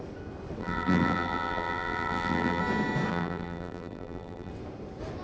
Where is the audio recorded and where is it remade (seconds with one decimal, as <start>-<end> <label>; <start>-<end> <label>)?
0.0-0.6 recorded; 0.6-2.6 remade; 2.6-3.1 recorded; 3.1-4.5 remade; 4.5-5.2 recorded